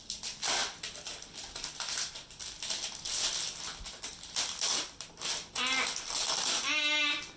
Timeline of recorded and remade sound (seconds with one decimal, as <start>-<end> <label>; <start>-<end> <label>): 0.0-7.4 recorded